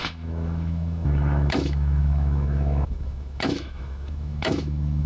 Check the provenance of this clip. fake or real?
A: fake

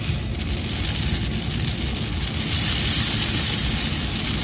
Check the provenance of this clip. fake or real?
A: real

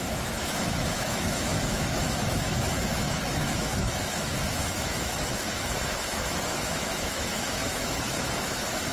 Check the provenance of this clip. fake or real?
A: fake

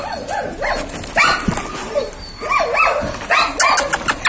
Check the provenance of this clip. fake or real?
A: real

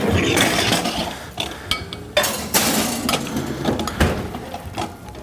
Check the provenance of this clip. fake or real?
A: real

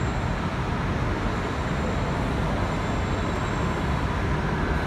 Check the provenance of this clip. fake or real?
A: real